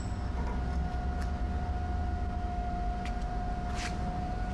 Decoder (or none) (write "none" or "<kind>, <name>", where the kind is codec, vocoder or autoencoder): none